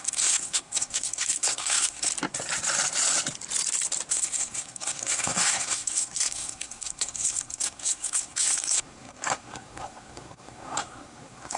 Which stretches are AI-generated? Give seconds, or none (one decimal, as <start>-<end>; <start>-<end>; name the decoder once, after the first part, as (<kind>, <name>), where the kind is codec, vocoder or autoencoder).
0.0-2.1 (codec, SNAC); 4.1-11.6